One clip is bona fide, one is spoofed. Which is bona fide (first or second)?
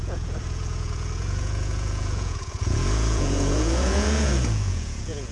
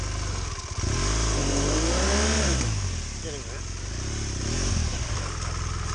second